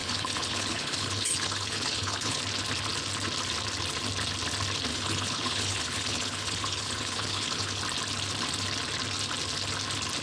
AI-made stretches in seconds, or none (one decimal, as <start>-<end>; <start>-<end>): 0.0-2.4; 4.9-7.8

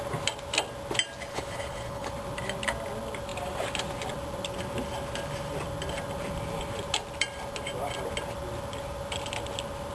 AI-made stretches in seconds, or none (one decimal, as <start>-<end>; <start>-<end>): 1.3-2.1